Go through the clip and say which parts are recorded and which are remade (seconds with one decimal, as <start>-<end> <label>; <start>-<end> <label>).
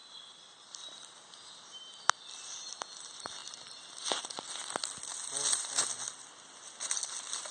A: 0.0-7.5 recorded